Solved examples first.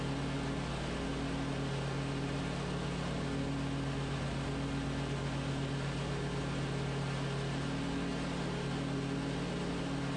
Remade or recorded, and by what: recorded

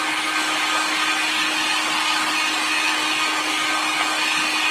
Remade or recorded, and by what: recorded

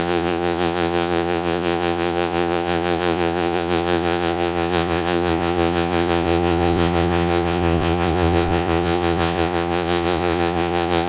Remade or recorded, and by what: remade, vocoder, Vocos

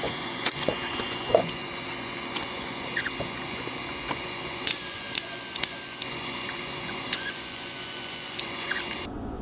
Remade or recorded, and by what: remade, vocoder, Vocos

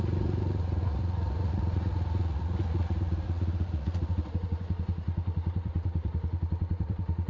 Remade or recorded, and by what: remade, vocoder, Vocos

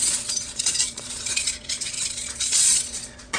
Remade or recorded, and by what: remade, vocoder, Vocos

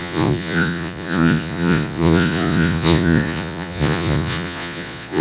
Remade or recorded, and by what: remade, vocoder, Vocos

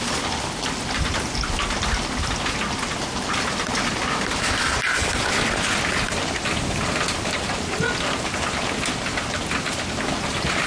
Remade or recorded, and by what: recorded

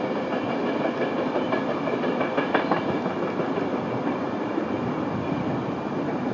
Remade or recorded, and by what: recorded